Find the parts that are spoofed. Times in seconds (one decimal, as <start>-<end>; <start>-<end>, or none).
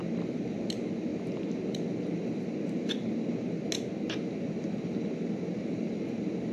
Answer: none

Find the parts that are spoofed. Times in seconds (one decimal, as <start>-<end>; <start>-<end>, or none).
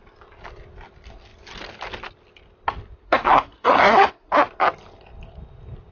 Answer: 3.0-4.3